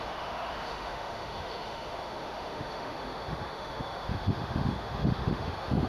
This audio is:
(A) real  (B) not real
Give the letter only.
B